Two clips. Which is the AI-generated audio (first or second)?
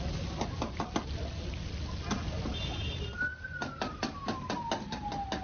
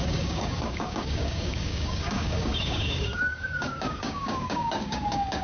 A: second